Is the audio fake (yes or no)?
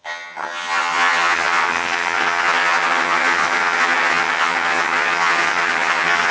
yes